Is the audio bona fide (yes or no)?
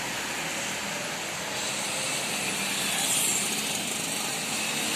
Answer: yes